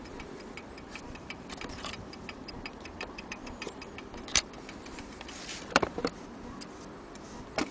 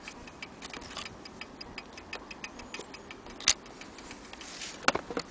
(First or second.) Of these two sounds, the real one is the second